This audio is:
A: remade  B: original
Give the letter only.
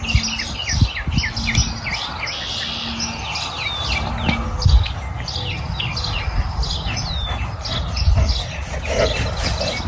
B